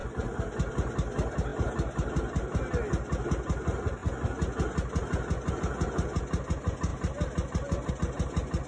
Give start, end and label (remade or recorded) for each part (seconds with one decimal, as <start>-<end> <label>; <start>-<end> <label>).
0.0-8.7 recorded